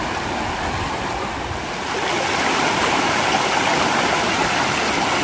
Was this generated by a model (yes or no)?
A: no